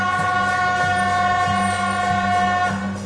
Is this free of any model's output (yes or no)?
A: yes